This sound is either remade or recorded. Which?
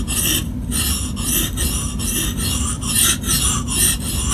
recorded